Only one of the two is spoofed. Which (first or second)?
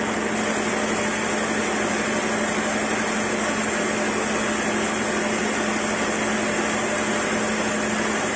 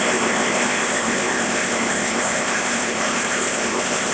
second